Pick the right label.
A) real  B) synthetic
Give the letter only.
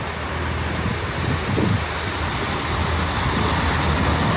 A